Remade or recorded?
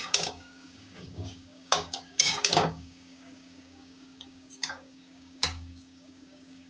remade